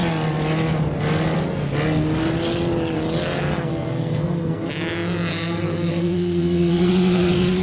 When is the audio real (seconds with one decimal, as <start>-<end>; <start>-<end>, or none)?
0.0-3.5; 4.7-5.3; 6.9-7.6